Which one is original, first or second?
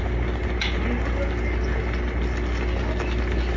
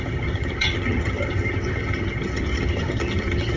first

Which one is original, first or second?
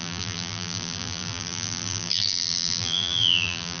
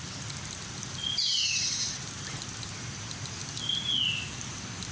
second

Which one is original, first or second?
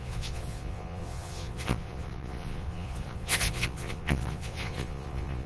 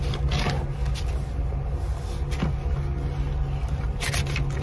second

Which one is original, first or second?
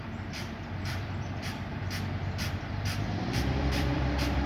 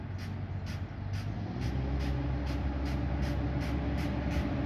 second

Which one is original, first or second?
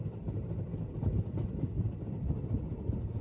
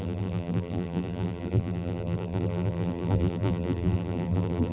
first